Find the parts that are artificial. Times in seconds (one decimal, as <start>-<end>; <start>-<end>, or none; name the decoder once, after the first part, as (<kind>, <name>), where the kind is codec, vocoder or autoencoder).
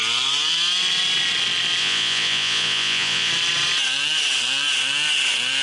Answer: 1.8-3.3 (vocoder, Vocos)